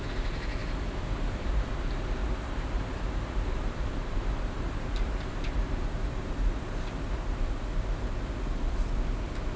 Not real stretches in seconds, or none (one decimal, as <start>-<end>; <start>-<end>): 0.6-1.7; 2.2-7.4